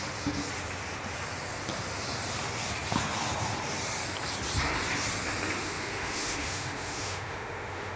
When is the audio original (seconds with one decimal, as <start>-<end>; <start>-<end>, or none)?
0.0-5.6